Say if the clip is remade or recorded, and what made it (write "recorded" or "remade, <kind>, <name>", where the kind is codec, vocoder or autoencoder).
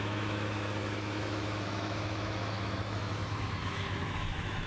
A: remade, autoencoder, DAC-VAE